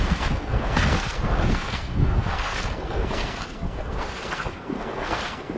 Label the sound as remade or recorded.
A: remade